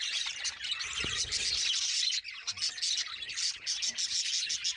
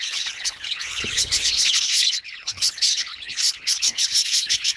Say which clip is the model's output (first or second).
second